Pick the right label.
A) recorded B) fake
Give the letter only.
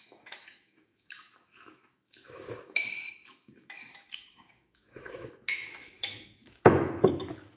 B